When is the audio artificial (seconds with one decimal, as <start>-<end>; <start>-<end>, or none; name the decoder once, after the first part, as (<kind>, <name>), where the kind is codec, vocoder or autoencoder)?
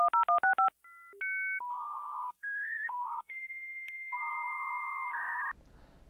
1.7-5.4 (codec, SNAC)